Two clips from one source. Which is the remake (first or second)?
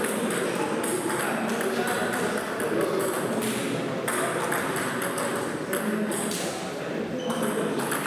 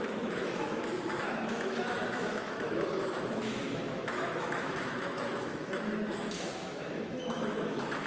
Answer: second